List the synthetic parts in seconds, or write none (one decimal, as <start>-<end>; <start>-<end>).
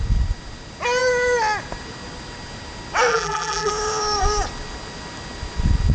3.1-3.7